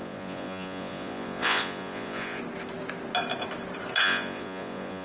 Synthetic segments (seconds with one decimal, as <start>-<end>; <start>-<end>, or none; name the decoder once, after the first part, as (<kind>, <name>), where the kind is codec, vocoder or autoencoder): 0.0-2.4 (vocoder, Vocos); 4.0-5.0

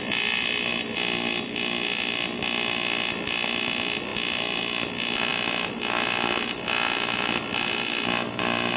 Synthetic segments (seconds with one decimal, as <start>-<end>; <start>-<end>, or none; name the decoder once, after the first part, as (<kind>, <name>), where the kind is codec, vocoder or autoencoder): none